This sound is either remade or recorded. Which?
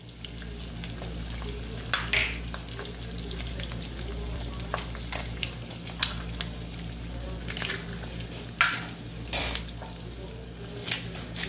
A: recorded